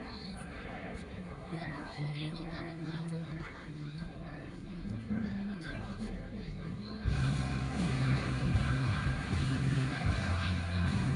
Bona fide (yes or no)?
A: no